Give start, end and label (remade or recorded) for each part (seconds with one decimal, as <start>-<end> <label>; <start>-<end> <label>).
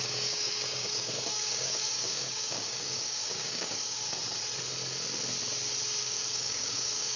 0.0-4.0 remade; 4.0-6.0 recorded; 6.0-7.2 remade